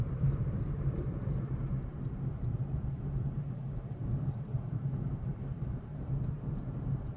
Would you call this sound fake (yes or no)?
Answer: yes